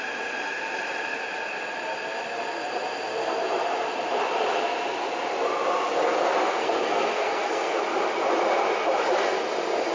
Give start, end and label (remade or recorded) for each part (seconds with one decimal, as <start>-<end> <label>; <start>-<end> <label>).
0.0-6.4 recorded; 6.4-7.8 remade; 7.8-9.9 recorded